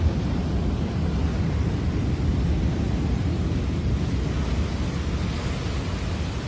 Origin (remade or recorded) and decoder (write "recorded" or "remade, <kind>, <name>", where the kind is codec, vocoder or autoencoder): recorded